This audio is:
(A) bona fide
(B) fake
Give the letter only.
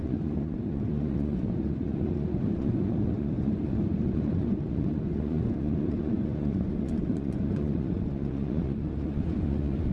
B